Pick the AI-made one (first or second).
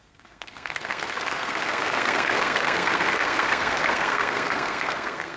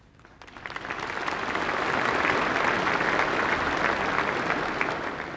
first